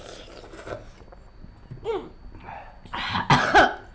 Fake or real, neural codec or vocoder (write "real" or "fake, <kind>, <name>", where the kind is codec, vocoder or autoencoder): real